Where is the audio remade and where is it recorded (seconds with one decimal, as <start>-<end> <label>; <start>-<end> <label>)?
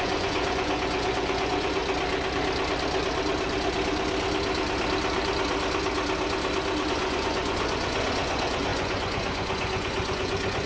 0.0-1.8 remade; 1.8-6.9 recorded; 6.9-10.7 remade